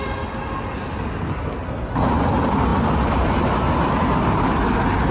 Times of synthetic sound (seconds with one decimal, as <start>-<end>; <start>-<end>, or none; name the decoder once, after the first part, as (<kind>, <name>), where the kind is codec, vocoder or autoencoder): none